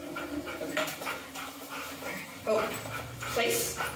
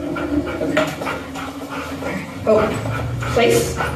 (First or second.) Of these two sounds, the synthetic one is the first